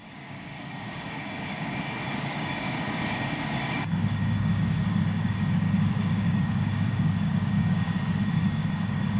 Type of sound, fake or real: fake